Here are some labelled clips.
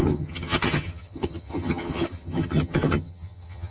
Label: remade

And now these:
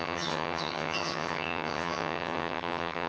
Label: remade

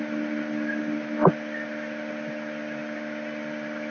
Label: recorded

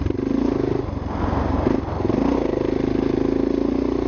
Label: recorded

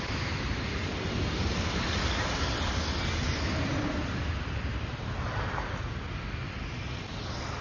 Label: recorded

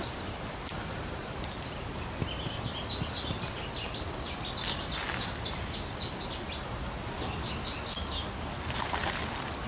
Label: recorded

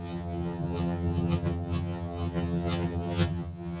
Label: remade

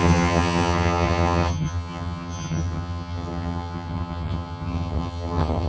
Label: remade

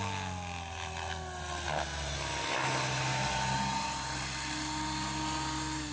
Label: recorded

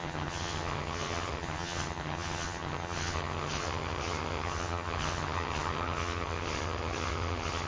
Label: remade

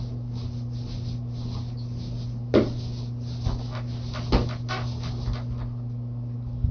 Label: recorded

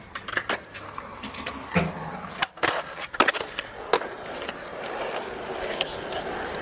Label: recorded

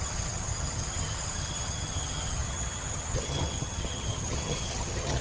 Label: remade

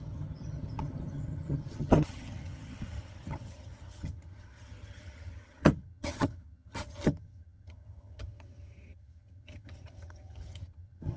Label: remade